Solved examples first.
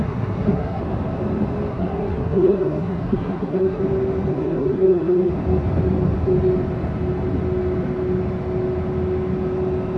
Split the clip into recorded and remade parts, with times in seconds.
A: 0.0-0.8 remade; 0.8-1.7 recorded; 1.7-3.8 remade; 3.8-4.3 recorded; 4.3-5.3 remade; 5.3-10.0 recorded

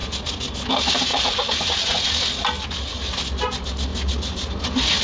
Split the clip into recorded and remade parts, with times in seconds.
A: 0.0-1.1 recorded; 1.1-2.2 remade; 2.2-5.0 recorded

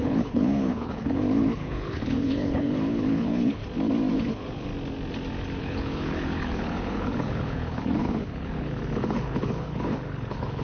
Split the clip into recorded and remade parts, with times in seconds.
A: 0.0-3.6 remade; 3.6-4.1 recorded; 4.1-4.7 remade; 4.7-5.6 recorded; 5.6-10.6 remade